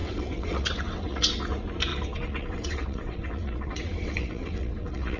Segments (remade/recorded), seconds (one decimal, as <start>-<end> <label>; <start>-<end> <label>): 0.0-1.4 remade; 1.4-1.9 recorded; 1.9-5.2 remade

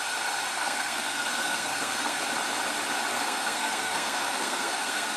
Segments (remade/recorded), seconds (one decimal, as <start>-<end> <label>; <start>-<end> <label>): 0.0-0.5 recorded; 0.5-2.2 remade; 2.2-3.1 recorded; 3.1-5.2 remade

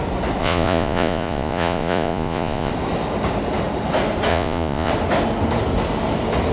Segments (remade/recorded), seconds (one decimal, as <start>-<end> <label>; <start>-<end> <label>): 0.0-0.4 recorded; 0.4-2.7 remade; 2.7-4.3 recorded; 4.3-4.9 remade; 4.9-6.5 recorded

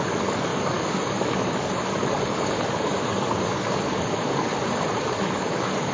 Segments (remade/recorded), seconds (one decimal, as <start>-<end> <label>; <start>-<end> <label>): 0.0-4.5 remade; 4.5-5.0 recorded; 5.0-5.9 remade

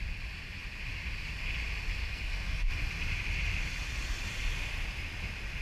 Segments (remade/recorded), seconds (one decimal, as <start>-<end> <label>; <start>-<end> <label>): 0.0-2.0 recorded; 2.0-2.7 remade; 2.7-5.6 recorded

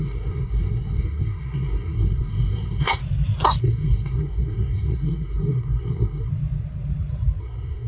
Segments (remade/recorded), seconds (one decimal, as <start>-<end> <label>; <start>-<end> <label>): 0.0-3.0 remade; 3.0-3.6 recorded; 3.6-6.3 remade; 6.3-7.4 recorded; 7.4-7.9 remade

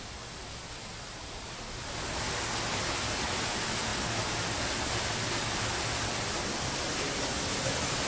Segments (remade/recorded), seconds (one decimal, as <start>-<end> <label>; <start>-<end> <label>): 0.0-8.1 recorded